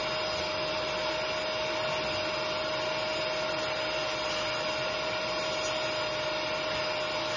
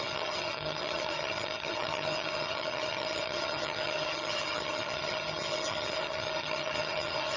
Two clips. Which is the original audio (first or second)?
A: first